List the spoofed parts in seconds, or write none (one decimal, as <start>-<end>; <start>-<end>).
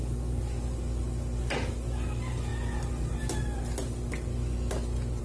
none